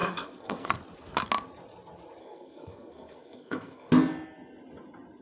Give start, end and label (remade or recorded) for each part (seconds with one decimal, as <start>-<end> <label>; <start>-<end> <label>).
0.0-0.7 remade; 0.7-2.2 recorded; 2.2-3.9 remade; 3.9-5.2 recorded